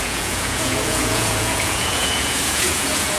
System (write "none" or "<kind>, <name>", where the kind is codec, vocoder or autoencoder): vocoder, Vocos